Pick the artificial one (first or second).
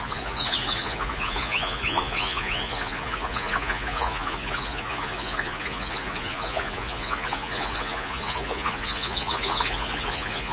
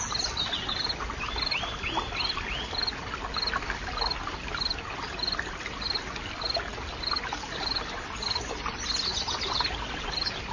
first